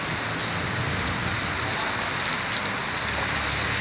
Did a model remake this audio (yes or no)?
no